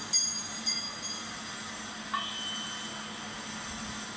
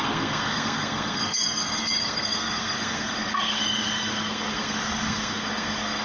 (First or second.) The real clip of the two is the first